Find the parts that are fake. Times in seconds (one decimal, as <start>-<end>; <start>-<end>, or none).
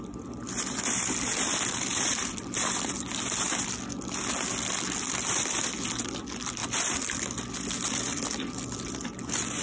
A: 0.0-9.6